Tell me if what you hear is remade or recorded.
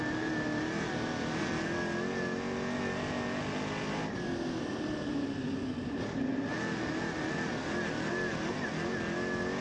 recorded